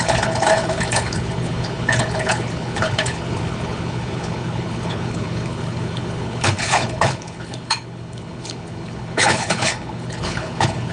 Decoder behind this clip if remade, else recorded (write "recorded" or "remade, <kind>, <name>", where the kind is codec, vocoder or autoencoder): remade, codec, HILCodec